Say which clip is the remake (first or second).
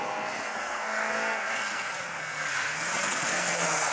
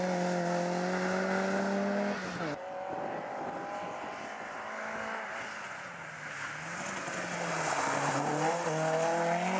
first